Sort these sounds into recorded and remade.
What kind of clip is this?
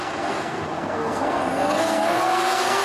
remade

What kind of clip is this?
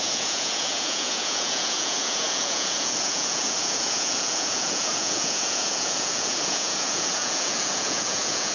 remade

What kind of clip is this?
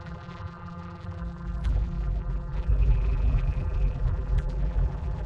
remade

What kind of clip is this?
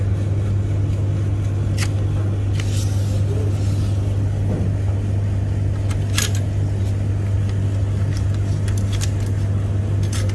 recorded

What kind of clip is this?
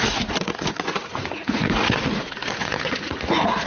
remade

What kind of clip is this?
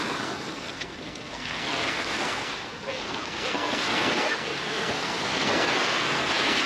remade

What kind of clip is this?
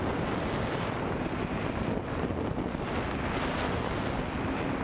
recorded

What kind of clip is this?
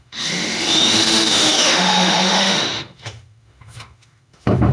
remade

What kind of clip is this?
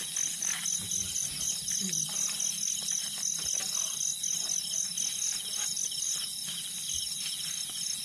recorded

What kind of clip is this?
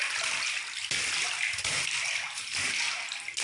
recorded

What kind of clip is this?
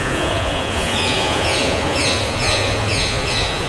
remade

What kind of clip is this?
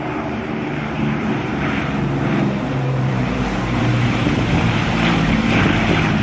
remade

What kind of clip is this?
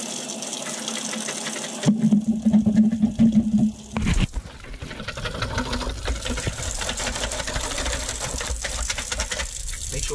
recorded